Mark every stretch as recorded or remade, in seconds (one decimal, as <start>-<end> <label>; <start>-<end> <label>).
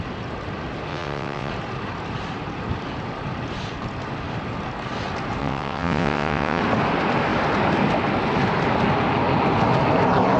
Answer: 0.0-0.9 recorded; 0.9-1.5 remade; 1.5-5.4 recorded; 5.4-6.6 remade; 6.6-10.4 recorded